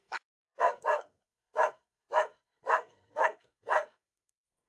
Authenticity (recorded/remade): remade